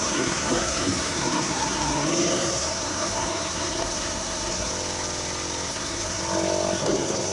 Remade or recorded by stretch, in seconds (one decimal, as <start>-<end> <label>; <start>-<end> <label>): 0.0-4.7 remade; 4.7-5.7 recorded; 5.7-6.2 remade; 6.2-6.8 recorded; 6.8-7.3 remade

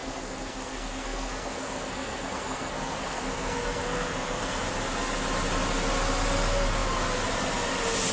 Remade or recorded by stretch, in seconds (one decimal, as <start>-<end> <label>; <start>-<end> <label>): 0.0-4.6 remade; 4.6-8.1 recorded

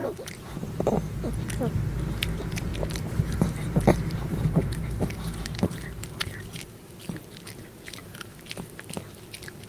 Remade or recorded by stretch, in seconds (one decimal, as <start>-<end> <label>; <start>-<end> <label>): 0.0-0.7 remade; 0.7-2.7 recorded; 2.7-7.0 remade; 7.0-8.0 recorded; 8.0-8.9 remade; 8.9-9.7 recorded

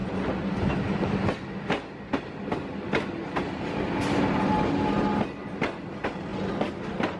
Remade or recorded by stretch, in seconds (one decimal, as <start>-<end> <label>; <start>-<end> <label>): 0.0-7.2 recorded

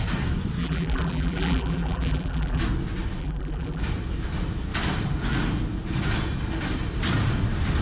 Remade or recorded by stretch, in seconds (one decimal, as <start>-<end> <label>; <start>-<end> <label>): 0.0-0.6 recorded; 0.6-2.6 remade; 2.6-3.2 recorded; 3.2-3.8 remade; 3.8-7.8 recorded

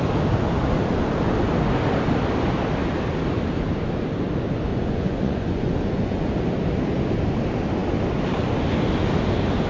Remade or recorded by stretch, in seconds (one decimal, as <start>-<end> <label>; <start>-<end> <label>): 0.0-4.7 recorded; 4.7-6.3 remade; 6.3-9.7 recorded

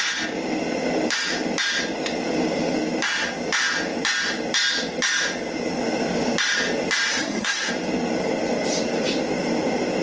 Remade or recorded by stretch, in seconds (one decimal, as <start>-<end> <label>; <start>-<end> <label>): 0.0-7.1 recorded; 7.1-7.7 remade; 7.7-10.0 recorded